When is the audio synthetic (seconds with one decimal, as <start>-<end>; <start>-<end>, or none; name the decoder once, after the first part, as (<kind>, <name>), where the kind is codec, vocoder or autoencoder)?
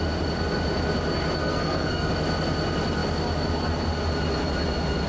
1.4-2.1 (codec, SNAC)